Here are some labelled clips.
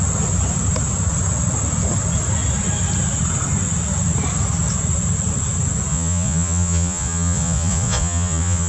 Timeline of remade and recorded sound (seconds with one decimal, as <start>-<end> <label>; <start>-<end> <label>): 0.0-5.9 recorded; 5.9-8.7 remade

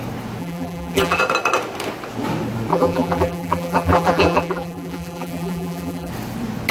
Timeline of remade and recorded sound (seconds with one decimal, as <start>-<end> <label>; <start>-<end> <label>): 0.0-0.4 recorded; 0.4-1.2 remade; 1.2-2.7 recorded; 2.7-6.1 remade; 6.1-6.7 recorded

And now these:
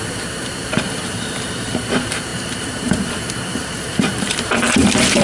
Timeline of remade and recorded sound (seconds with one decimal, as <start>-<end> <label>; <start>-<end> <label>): 0.0-5.2 remade

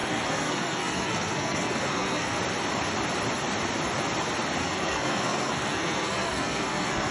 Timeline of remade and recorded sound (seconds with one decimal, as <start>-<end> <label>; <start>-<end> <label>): 0.0-2.4 remade; 2.4-4.6 recorded; 4.6-7.1 remade

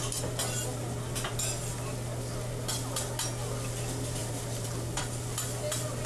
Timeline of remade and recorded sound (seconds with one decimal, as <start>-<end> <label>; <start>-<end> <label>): 0.0-4.2 recorded; 4.2-5.0 remade; 5.0-6.1 recorded